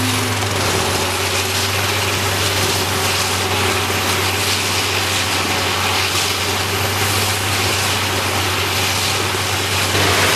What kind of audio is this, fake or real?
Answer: real